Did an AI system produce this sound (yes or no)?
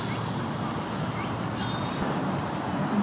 no